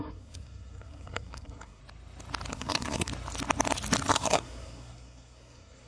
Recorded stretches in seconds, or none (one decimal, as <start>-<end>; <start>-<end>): 1.8-2.5; 3.1-4.1